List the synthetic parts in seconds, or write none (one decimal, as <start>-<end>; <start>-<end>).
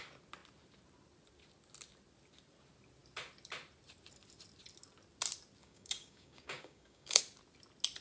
5.6-7.2